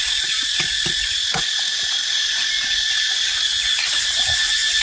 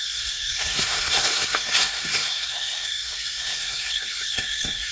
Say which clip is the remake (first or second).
second